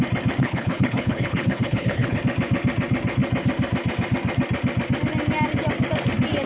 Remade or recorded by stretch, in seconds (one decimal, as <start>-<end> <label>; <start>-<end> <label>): 0.0-0.4 recorded; 0.4-2.2 remade; 2.2-6.5 recorded